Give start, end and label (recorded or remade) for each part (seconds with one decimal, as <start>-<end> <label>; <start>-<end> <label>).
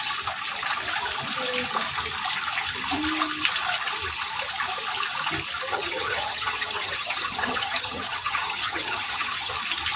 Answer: 0.0-5.7 recorded; 5.7-9.5 remade; 9.5-10.0 recorded